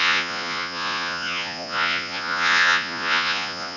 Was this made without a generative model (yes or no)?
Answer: no